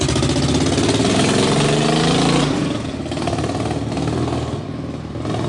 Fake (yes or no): no